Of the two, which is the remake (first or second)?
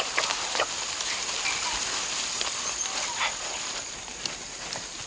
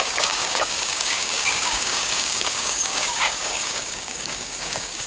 second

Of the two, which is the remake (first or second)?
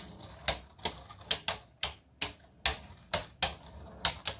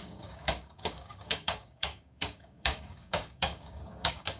second